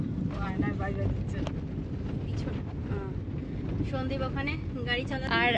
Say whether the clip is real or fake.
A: real